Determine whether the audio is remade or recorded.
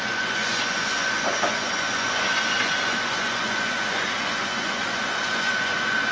remade